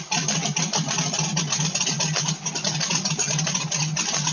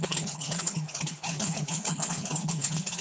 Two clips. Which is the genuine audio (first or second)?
first